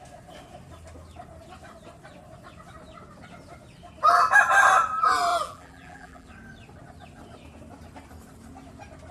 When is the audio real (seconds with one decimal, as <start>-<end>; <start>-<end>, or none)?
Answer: 0.0-5.3; 6.3-9.1